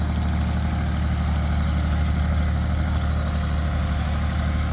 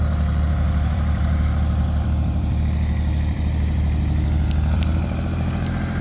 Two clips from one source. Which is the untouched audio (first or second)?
first